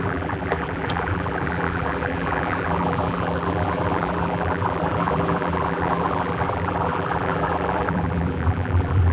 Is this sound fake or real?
fake